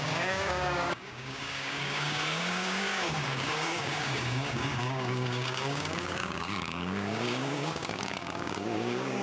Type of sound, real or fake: fake